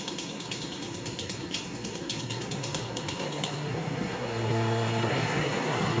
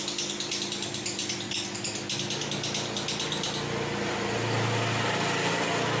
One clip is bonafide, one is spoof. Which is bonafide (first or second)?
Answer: second